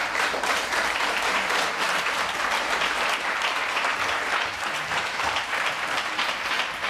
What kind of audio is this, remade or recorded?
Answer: remade